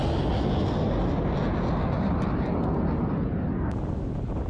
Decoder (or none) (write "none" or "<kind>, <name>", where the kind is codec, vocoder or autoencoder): none